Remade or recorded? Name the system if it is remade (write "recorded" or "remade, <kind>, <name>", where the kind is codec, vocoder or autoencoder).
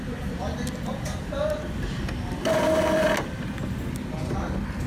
recorded